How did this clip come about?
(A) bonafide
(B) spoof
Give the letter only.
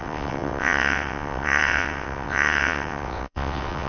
B